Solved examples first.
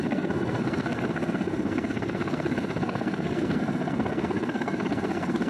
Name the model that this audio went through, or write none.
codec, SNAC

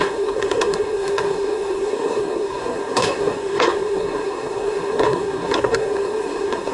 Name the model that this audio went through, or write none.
codec, SNAC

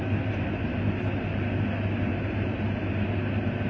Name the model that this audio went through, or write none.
none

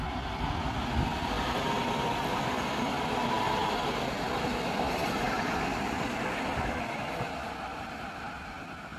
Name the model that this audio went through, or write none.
none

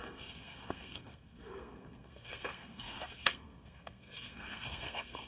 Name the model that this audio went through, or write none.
codec, SNAC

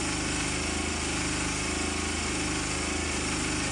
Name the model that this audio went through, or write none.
none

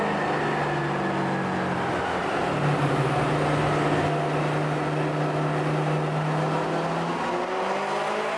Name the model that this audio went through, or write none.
none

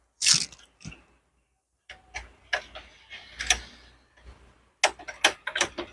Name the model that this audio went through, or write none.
none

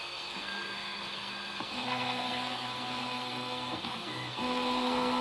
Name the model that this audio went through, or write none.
codec, SNAC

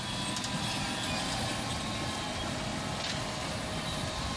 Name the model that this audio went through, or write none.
none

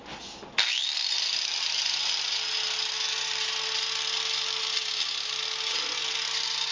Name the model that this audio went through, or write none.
none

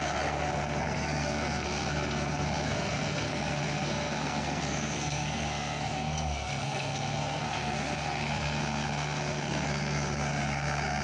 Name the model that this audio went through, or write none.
codec, SNAC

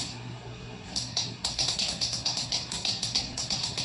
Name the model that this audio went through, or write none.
codec, SNAC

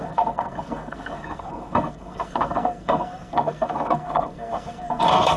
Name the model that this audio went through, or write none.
codec, SNAC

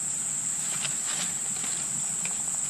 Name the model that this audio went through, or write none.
none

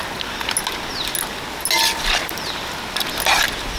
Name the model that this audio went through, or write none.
none